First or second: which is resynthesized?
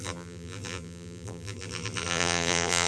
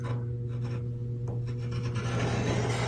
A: first